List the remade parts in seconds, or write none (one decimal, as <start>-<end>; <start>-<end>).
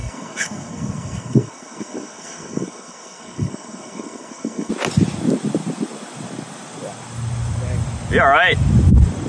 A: 0.0-4.7